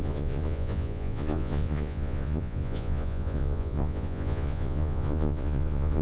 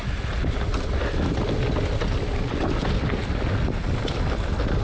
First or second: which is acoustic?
second